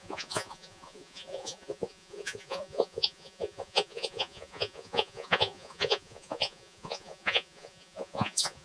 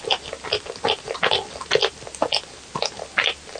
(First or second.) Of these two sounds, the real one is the second